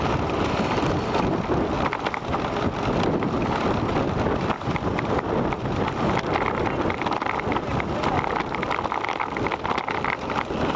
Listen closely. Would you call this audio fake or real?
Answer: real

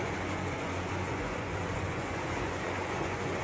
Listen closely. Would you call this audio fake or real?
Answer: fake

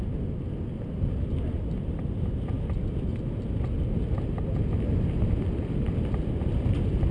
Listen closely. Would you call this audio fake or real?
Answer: real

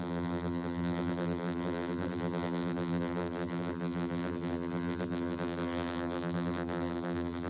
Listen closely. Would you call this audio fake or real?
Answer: fake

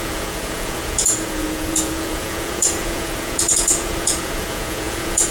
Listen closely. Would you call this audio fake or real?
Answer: fake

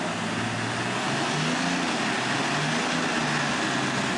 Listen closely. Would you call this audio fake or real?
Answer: real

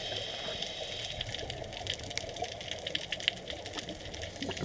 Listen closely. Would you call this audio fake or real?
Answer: real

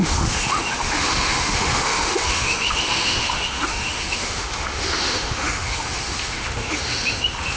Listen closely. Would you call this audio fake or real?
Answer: fake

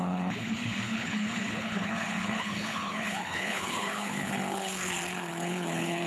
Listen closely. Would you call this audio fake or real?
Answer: fake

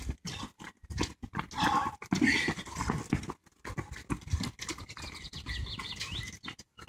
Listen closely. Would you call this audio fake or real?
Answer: real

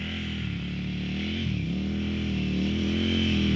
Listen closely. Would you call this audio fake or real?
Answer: real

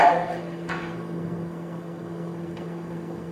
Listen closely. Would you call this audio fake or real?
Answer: fake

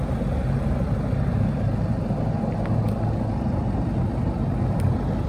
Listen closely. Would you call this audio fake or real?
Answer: real